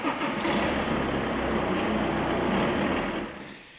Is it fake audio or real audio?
real